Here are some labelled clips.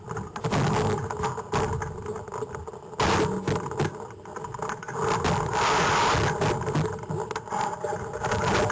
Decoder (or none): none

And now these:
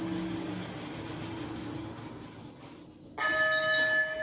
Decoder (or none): none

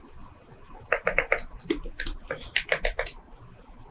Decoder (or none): none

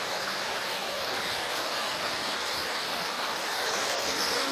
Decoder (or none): codec, DAC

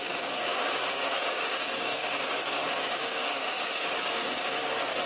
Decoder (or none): codec, DAC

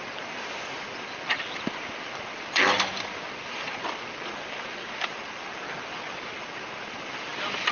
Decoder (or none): none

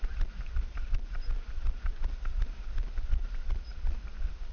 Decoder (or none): none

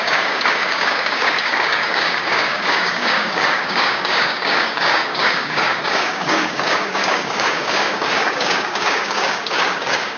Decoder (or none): codec, DAC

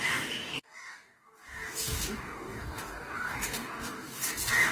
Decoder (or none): codec, DAC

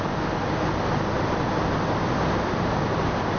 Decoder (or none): none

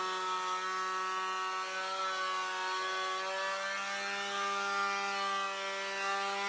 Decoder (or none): none